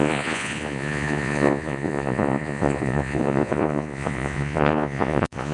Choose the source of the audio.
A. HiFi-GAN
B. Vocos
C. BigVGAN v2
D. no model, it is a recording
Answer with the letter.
B